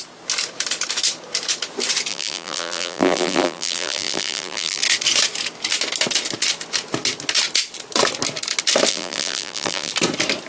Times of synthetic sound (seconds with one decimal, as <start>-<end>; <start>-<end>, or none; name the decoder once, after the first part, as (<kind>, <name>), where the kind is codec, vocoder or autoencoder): 2.1-4.8 (vocoder, BigVGAN v2); 8.9-9.9